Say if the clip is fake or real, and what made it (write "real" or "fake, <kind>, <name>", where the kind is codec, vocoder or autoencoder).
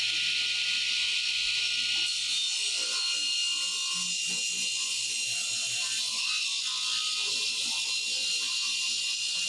real